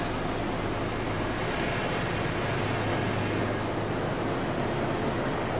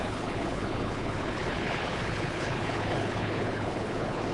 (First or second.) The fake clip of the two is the second